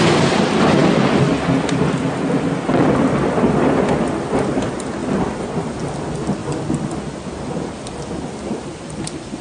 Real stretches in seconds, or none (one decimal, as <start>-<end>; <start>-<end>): 0.0-5.0; 5.6-9.4